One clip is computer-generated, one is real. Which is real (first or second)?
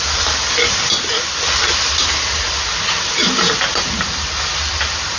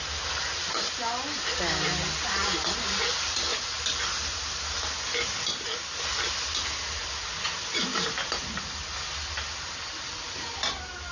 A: second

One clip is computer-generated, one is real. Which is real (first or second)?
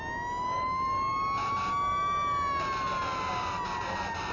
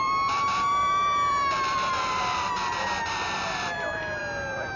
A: first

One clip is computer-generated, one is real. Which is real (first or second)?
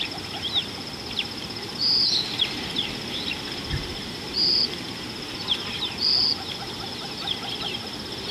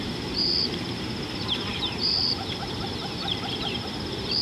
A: first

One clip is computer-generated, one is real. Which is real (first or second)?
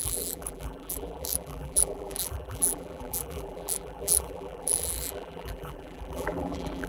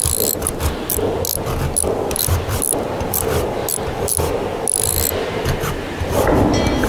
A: second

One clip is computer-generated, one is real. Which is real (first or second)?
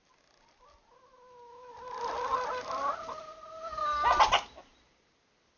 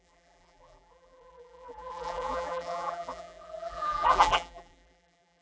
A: first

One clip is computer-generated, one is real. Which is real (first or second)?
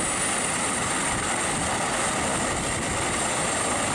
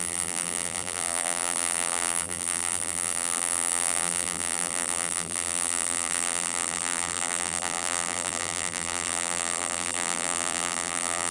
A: first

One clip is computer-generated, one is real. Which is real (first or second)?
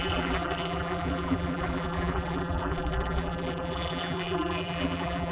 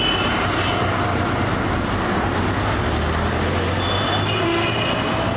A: second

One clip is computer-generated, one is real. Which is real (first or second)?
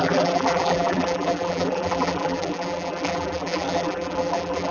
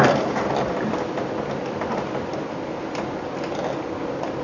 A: second